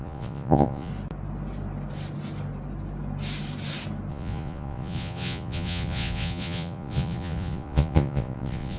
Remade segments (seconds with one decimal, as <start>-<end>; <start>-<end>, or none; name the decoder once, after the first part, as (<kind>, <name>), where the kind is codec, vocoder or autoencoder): 0.0-0.9 (vocoder, Vocos); 4.1-8.8